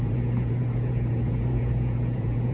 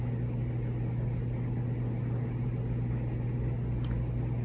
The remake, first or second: first